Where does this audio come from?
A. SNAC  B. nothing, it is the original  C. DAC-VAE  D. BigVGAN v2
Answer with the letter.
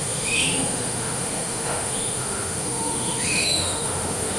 C